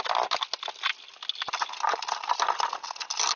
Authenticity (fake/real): real